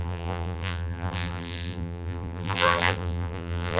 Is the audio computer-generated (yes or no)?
yes